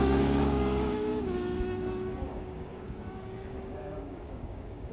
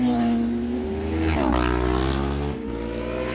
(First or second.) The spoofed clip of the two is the first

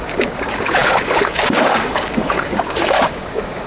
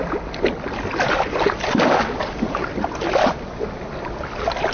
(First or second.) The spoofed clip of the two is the first